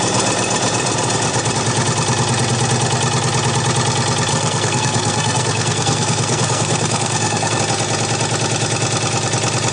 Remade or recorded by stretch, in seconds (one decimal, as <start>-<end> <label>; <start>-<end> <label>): 0.0-4.3 recorded; 4.3-7.6 remade; 7.6-9.7 recorded